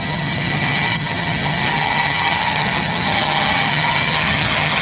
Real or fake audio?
fake